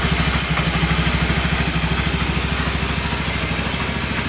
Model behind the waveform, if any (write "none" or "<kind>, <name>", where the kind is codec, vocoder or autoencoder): none